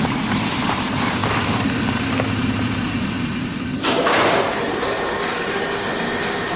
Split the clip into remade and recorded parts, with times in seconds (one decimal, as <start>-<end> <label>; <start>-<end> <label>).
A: 0.0-1.2 remade; 1.2-1.8 recorded; 1.8-3.5 remade; 3.5-6.6 recorded